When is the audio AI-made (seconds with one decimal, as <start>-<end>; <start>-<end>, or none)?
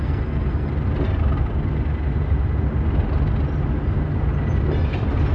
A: 0.0-0.7